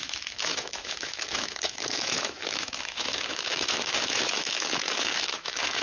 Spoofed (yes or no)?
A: yes